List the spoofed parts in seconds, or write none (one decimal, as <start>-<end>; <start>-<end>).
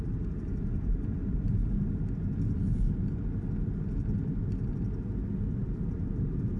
0.0-1.6; 5.6-6.6